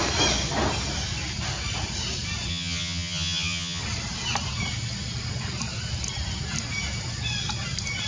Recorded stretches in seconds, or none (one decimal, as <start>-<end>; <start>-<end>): 0.0-2.5; 3.8-8.1